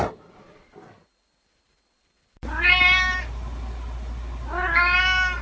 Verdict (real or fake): real